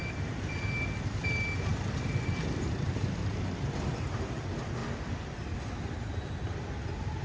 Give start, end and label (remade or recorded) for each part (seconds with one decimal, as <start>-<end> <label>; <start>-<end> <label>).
0.0-7.2 recorded